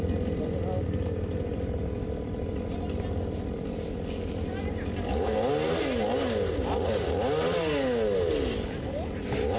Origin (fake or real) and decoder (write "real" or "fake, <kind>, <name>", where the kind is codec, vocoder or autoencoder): real